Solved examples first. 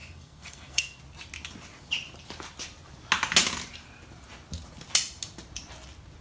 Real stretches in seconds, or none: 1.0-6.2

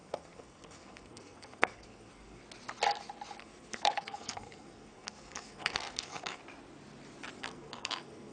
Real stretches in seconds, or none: 2.4-3.4; 6.4-7.4

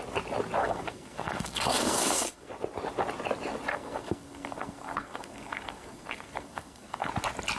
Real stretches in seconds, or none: 0.0-0.6; 2.5-3.7; 7.1-7.6

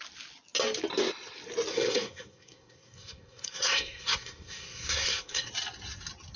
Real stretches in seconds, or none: 0.0-1.7; 5.5-6.4

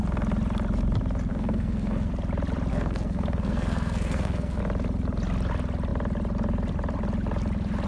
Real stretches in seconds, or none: 0.0-1.3; 2.1-2.7; 4.6-7.9

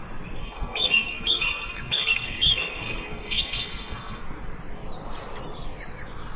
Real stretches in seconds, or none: 0.0-0.4; 4.2-6.4

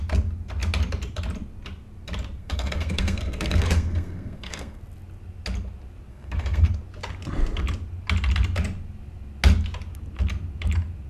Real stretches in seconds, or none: 0.0-2.4; 4.8-6.1; 6.7-11.1

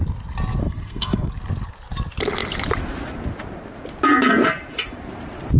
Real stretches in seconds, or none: 0.0-0.6; 1.3-5.6